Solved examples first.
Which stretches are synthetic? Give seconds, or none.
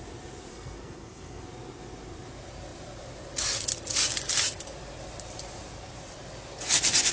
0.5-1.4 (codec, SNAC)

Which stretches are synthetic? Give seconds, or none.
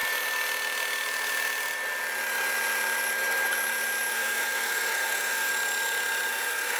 4.1-5.5 (codec, SNAC); 6.3-6.8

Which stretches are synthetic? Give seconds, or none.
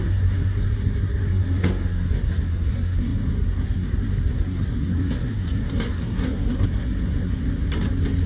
0.0-7.4 (codec, SNAC)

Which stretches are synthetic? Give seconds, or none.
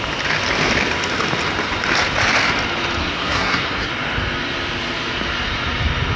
3.0-3.9 (codec, SNAC)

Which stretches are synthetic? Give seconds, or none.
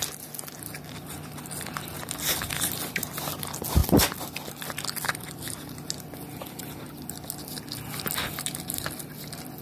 none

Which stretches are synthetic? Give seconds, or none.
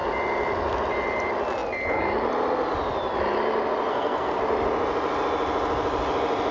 3.9-4.4 (codec, SNAC)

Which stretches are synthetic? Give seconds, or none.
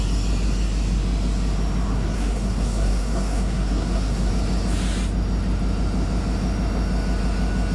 1.9-4.3 (codec, SNAC)